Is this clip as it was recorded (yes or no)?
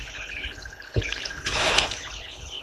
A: no